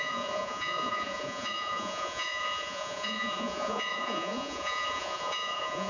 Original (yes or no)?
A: no